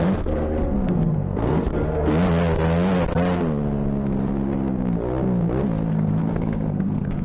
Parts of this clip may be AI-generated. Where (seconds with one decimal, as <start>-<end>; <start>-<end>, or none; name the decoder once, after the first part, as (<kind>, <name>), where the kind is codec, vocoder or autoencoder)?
0.0-2.1 (codec, SNAC); 5.9-7.2